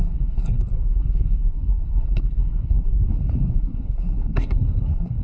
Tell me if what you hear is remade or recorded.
remade